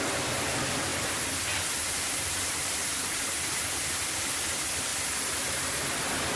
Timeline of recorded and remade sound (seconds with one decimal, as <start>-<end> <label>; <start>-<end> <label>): 0.0-6.4 recorded